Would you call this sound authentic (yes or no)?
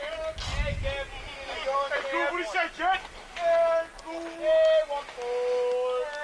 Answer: yes